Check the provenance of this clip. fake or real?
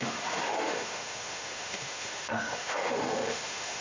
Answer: fake